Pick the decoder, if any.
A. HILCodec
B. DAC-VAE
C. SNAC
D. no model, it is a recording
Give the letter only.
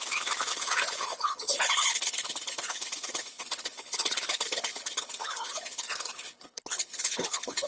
A